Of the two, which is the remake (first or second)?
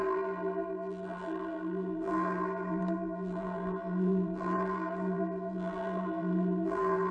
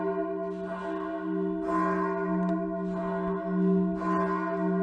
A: first